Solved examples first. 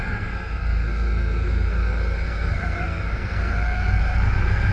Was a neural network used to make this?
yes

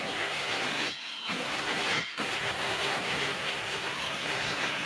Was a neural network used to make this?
yes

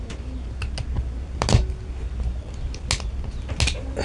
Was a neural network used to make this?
no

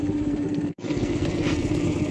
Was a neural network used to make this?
yes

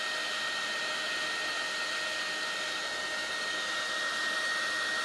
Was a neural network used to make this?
no